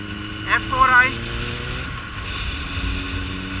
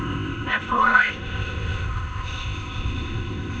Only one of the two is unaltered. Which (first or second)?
first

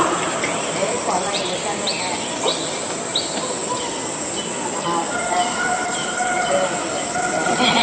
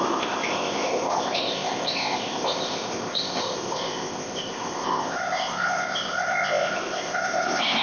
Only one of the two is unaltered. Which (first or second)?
first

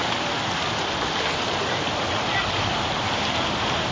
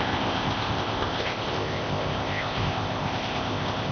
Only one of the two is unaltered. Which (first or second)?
first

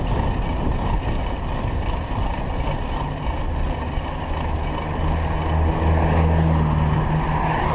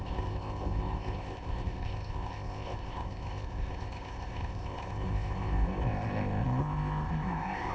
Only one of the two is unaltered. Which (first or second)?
first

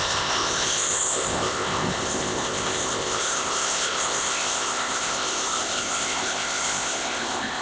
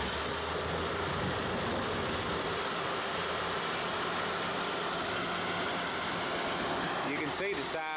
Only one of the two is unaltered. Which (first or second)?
second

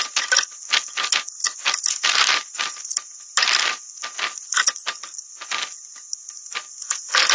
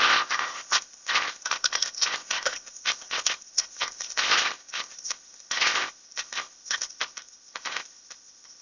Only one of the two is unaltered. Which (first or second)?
first